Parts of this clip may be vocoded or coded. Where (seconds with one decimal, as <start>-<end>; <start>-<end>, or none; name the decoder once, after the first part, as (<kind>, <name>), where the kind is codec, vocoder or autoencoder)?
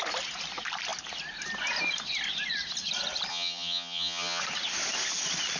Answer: 3.3-4.4 (vocoder, HiFi-GAN)